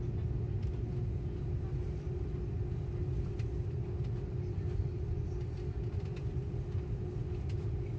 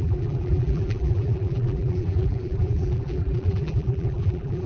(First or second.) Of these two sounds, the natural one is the first